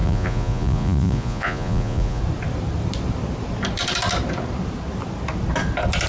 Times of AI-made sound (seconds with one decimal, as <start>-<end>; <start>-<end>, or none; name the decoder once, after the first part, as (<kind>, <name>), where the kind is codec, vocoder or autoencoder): 0.0-2.2 (vocoder, Vocos)